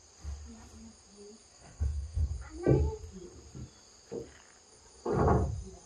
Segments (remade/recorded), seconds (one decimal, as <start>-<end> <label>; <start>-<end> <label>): 0.0-1.5 recorded; 1.5-2.3 remade; 2.3-5.9 recorded